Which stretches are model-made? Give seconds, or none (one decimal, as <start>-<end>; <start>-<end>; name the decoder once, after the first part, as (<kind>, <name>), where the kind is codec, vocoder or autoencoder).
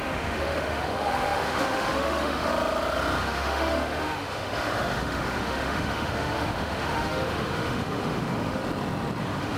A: 0.0-2.5 (autoencoder, DAC-VAE); 3.2-8.6; 9.2-9.6